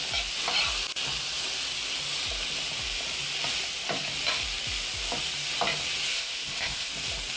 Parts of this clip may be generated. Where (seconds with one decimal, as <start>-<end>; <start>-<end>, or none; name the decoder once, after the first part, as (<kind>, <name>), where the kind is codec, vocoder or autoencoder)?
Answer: 6.1-6.9 (codec, ZipCodec)